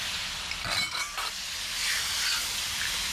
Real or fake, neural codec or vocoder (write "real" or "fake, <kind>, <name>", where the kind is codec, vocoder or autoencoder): real